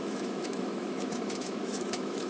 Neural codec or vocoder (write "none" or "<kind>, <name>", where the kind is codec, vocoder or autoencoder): autoencoder, DAC-VAE